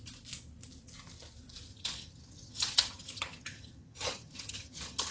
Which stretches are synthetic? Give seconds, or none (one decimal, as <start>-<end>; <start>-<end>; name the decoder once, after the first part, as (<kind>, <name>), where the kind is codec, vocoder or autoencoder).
1.7-5.1 (vocoder, HiFi-GAN)